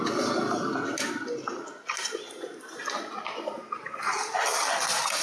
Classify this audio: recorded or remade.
recorded